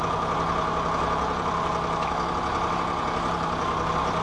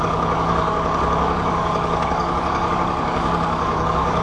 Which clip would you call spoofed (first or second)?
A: second